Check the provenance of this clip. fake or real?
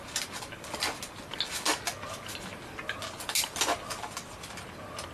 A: real